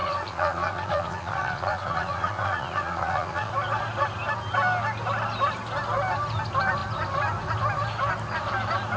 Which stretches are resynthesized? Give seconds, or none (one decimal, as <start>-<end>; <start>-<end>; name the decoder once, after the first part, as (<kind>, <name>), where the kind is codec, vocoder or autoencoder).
0.0-3.5 (vocoder, Vocos)